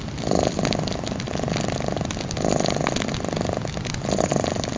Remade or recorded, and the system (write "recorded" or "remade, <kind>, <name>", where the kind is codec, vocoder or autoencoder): recorded